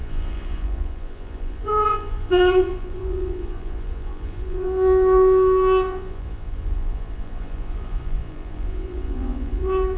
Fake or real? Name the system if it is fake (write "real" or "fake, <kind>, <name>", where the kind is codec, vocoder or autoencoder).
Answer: fake, vocoder, Vocos